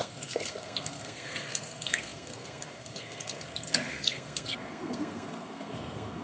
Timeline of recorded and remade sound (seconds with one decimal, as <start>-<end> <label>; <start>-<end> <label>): 0.0-6.2 remade